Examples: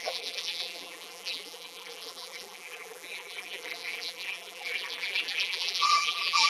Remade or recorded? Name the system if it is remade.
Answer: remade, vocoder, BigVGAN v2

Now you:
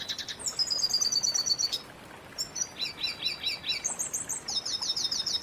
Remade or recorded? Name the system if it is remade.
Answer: remade, vocoder, BigVGAN v2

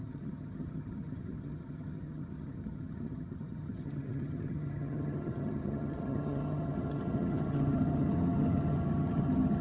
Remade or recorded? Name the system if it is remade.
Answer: remade, vocoder, HiFi-GAN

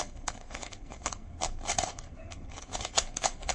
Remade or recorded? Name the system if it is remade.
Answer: remade, codec, SNAC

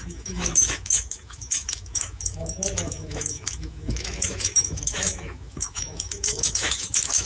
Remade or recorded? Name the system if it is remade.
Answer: remade, autoencoder, DAC-VAE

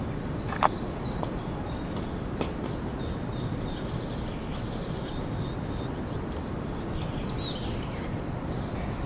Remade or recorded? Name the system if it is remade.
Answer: recorded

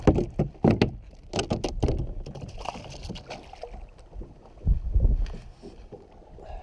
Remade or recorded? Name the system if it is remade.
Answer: recorded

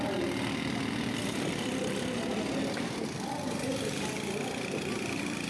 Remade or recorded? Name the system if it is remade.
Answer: recorded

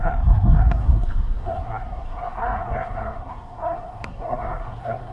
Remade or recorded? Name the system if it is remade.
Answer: remade, codec, SNAC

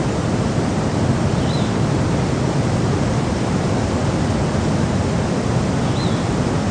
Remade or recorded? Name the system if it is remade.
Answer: recorded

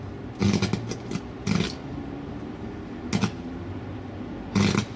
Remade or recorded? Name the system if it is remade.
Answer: recorded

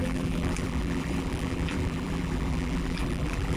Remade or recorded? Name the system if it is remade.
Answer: remade, vocoder, BigVGAN v2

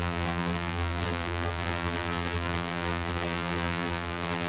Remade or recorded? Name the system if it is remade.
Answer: remade, vocoder, BigVGAN v2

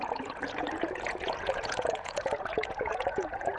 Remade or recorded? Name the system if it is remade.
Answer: remade, vocoder, Vocos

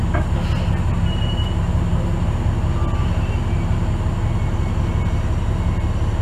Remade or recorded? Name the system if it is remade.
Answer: recorded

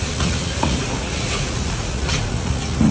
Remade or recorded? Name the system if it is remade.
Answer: remade, vocoder, Vocos